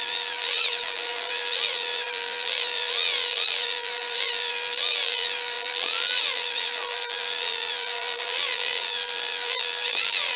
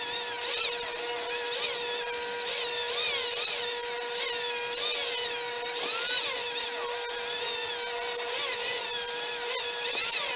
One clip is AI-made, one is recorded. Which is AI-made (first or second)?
first